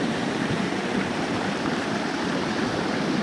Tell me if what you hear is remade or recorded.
remade